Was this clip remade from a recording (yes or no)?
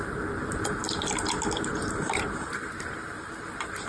yes